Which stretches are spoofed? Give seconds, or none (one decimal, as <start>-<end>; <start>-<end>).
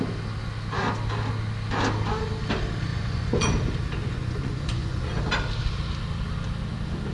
2.9-3.5; 4.0-5.1